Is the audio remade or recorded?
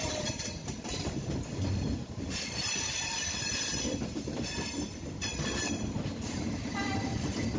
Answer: remade